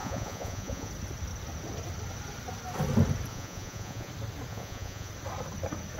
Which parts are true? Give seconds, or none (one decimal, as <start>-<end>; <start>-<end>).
0.9-3.3; 4.1-4.5; 5.1-6.0